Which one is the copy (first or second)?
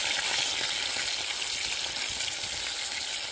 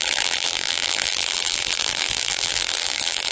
second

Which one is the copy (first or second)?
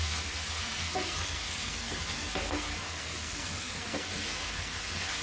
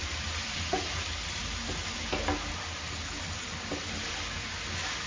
first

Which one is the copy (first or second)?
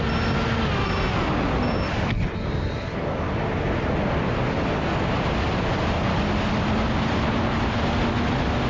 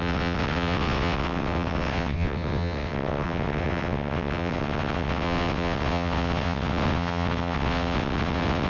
second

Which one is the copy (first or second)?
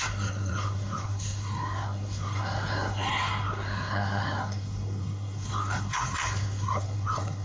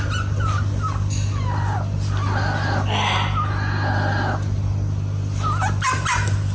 first